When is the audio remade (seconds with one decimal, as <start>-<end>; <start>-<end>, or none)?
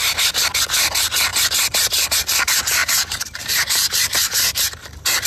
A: 2.8-4.0